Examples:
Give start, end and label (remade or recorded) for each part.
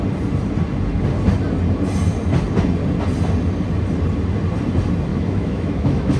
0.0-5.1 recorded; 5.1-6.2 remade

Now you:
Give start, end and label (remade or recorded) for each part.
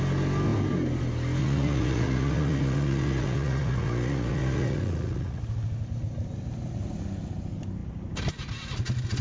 0.0-1.4 recorded; 1.4-5.4 remade; 5.4-9.2 recorded